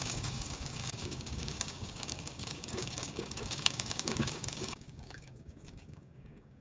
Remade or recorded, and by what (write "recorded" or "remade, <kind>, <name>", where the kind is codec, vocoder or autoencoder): remade, codec, DAC